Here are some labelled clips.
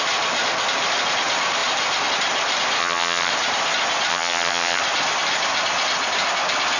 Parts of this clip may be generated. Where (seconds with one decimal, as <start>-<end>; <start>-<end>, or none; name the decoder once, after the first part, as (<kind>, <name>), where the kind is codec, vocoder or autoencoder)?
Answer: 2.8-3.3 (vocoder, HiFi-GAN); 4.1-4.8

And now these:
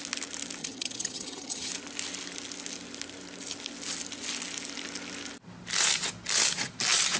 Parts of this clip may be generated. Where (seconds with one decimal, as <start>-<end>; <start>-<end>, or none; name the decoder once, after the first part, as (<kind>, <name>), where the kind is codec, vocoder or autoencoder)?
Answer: 0.6-1.7 (vocoder, HiFi-GAN)

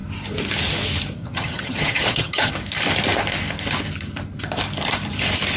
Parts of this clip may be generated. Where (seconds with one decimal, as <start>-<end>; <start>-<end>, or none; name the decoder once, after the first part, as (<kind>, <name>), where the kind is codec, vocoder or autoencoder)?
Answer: 1.2-2.5 (vocoder, HiFi-GAN)

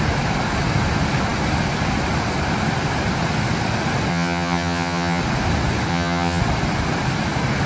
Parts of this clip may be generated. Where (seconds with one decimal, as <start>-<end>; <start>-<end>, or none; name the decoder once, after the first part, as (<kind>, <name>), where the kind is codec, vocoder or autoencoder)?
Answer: 4.1-5.2 (vocoder, HiFi-GAN); 5.9-6.4

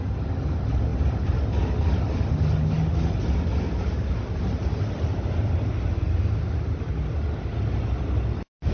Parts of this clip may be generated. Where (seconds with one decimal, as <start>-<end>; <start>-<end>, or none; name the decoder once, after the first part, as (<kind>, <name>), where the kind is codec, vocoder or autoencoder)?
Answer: none

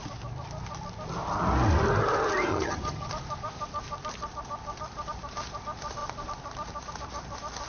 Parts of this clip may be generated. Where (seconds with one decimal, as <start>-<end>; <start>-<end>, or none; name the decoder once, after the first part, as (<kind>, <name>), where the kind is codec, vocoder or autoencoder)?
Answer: 2.5-3.1 (vocoder, HiFi-GAN)

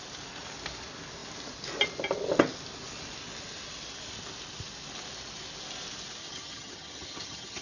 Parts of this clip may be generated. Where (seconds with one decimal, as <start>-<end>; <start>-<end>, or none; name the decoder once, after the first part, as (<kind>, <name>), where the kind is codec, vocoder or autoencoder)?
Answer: 6.2-7.6 (vocoder, HiFi-GAN)